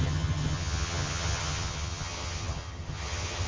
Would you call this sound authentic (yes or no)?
no